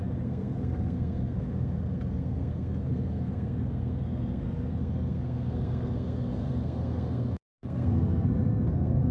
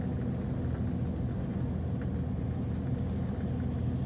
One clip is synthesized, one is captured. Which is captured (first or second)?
second